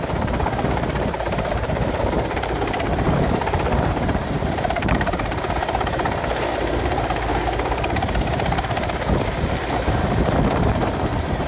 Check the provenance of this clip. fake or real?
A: fake